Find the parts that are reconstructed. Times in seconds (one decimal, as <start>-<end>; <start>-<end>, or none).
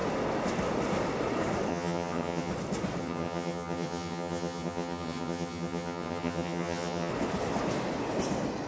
1.7-2.5; 3.0-7.1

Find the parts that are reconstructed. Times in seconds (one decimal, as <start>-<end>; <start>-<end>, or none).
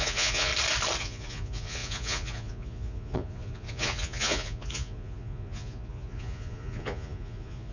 0.0-0.5; 1.0-7.7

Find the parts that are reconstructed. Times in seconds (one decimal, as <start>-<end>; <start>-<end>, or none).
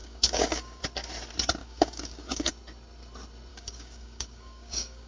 0.0-0.8; 1.6-2.5; 3.5-5.1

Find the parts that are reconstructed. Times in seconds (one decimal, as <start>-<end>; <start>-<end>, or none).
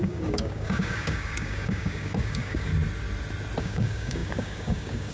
0.0-2.7; 3.6-5.1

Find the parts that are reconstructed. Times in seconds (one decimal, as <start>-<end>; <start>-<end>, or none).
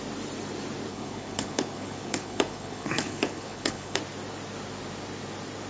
0.9-4.0